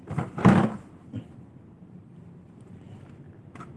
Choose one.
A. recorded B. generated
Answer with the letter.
A